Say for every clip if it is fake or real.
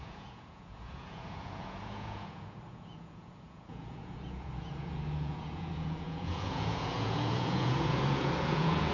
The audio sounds fake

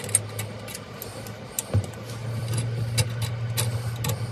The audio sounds real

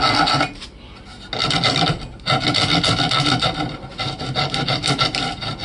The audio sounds real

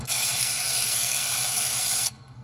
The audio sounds fake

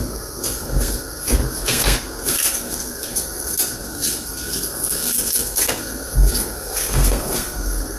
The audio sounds fake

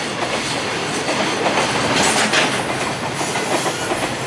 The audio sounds real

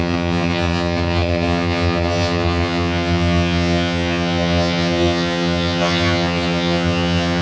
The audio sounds fake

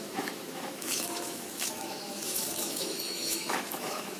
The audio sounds fake